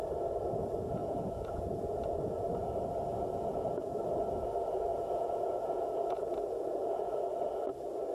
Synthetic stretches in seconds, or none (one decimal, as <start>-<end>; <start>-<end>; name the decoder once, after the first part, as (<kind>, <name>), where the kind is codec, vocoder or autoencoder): 1.0-2.5 (vocoder, Vocos); 3.1-4.0; 4.9-7.1